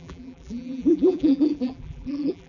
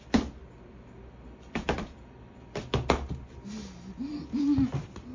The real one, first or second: second